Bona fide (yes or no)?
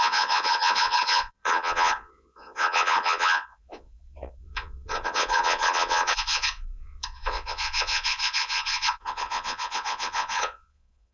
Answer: no